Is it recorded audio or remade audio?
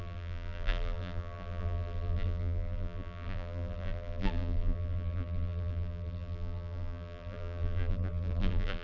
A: remade